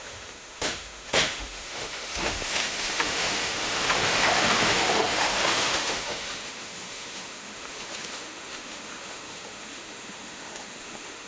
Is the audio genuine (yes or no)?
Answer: no